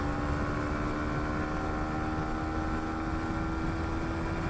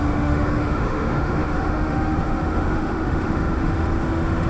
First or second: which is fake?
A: second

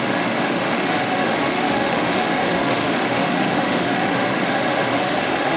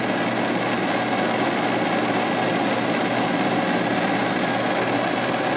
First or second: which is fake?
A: first